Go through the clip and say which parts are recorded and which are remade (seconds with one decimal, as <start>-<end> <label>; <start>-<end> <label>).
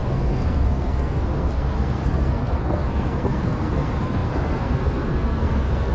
0.0-5.9 remade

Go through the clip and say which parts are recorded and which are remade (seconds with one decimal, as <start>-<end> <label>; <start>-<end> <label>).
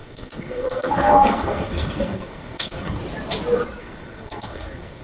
0.0-3.0 remade; 3.0-3.8 recorded; 3.8-5.0 remade